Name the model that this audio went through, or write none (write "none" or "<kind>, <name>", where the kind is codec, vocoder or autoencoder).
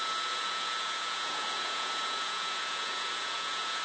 vocoder, Vocos